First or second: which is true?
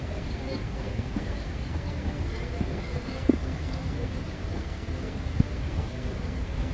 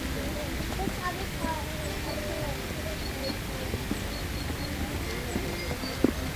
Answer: second